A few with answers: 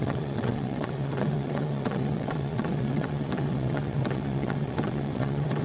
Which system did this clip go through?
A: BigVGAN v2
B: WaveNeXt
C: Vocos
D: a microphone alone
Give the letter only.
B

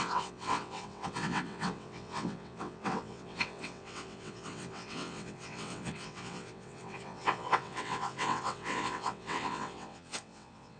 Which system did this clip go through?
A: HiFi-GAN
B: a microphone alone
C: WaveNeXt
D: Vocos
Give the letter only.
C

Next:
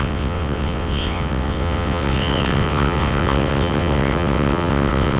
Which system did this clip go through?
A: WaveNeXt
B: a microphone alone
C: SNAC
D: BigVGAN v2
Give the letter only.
A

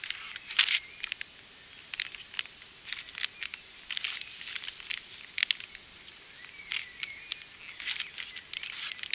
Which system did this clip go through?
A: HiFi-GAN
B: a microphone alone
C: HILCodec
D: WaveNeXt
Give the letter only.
B